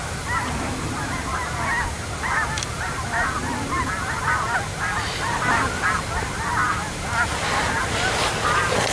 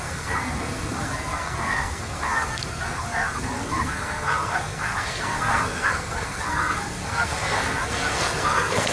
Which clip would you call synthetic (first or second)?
second